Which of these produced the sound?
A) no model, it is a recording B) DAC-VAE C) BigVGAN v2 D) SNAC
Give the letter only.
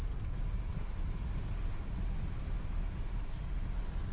A